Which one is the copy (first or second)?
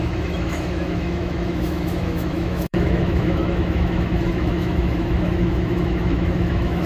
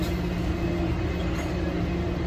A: first